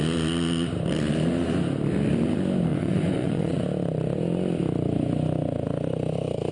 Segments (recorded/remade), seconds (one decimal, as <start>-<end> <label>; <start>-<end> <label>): 0.0-2.7 recorded; 2.7-3.6 remade; 3.6-6.5 recorded